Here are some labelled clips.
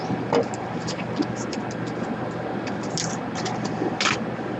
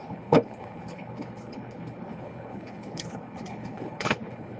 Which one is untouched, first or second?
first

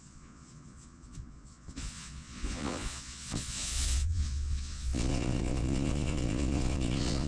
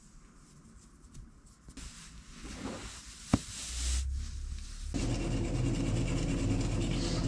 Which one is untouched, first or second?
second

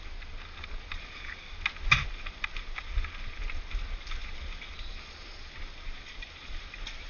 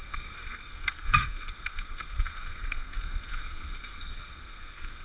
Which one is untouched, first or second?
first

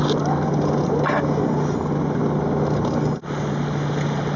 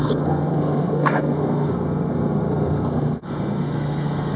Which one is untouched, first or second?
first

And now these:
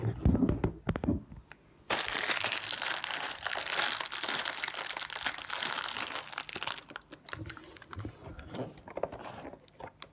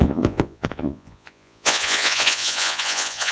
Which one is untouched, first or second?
first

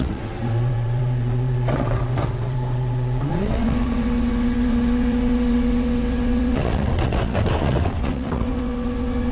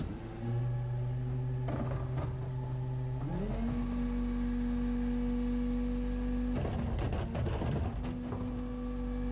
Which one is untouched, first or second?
second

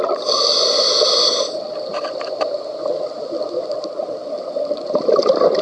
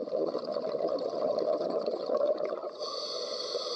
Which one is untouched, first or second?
first